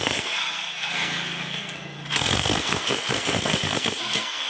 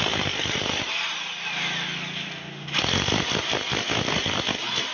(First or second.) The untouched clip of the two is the second